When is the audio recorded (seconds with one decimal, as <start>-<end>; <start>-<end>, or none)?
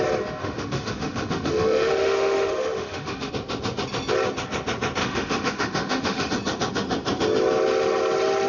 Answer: 0.0-0.4; 3.3-5.0; 6.3-8.5